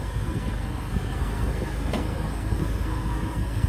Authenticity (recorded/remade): remade